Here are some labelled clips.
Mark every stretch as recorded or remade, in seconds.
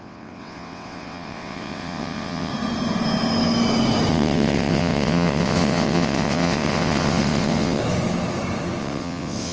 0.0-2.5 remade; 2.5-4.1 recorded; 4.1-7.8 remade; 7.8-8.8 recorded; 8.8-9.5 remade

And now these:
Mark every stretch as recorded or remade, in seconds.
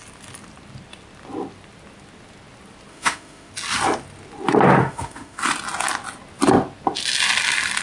0.0-2.9 recorded; 2.9-3.5 remade; 3.5-4.8 recorded; 4.8-5.4 remade; 5.4-7.8 recorded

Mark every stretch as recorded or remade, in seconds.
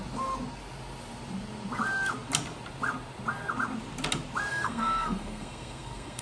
0.0-4.5 recorded; 4.5-6.2 remade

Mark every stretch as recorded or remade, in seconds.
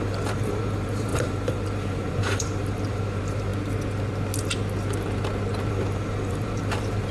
0.0-3.5 remade; 3.5-5.7 recorded; 5.7-7.1 remade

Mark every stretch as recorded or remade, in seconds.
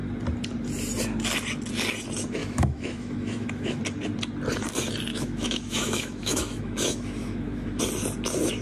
0.0-2.4 recorded; 2.4-3.8 remade; 3.8-5.1 recorded; 5.1-7.8 remade; 7.8-8.6 recorded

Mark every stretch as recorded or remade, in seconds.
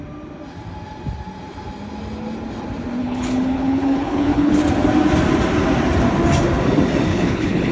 0.0-3.0 recorded; 3.0-4.6 remade; 4.6-7.1 recorded; 7.1-7.7 remade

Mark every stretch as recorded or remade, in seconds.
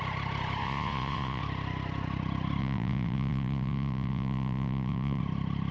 0.0-0.6 recorded; 0.6-1.4 remade; 1.4-2.6 recorded; 2.6-5.2 remade; 5.2-5.7 recorded